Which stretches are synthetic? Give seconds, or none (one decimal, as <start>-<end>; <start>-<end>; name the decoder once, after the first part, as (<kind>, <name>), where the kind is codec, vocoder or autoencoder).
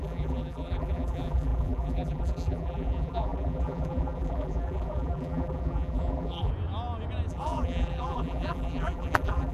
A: 0.0-6.5 (vocoder, BigVGAN v2); 7.3-9.5